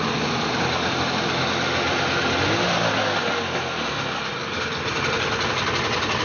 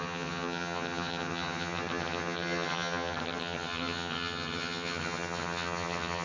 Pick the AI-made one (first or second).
second